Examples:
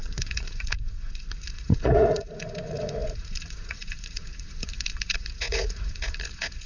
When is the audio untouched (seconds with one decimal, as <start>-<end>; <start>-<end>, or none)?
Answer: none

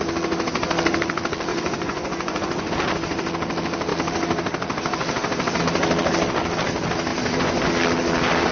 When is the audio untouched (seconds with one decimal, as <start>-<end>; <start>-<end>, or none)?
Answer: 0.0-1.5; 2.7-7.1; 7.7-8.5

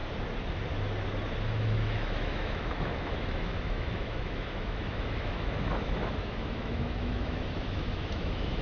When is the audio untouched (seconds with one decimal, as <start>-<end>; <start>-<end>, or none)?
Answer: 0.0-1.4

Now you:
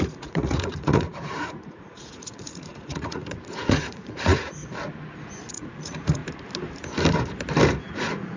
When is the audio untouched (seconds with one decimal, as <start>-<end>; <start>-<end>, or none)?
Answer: 4.6-5.5; 6.2-7.8

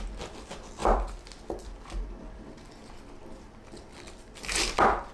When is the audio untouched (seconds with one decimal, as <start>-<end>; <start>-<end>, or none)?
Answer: 0.0-5.1

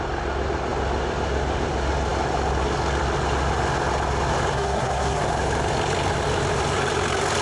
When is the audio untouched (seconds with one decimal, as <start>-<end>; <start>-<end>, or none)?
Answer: 0.0-4.5; 5.2-7.4